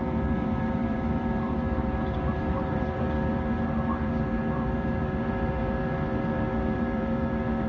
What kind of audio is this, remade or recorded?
remade